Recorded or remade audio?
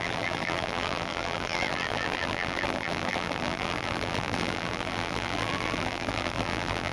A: remade